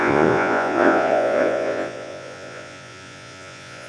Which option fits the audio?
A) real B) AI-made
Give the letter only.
B